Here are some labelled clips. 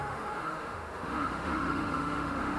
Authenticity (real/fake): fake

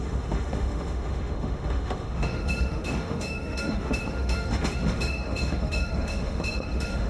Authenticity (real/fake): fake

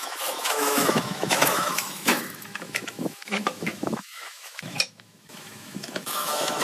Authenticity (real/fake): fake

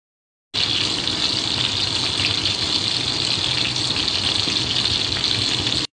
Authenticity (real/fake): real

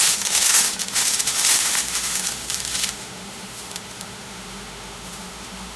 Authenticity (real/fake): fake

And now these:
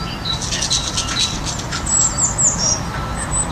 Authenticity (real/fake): real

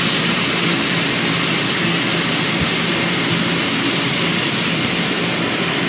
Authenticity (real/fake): real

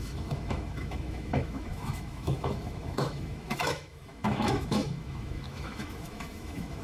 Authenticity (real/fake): fake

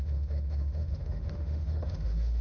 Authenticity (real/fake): fake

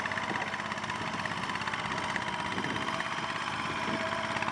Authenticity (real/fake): real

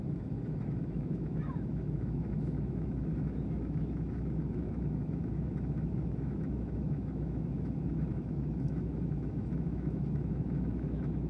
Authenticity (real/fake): fake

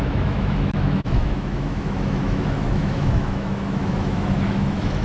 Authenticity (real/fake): fake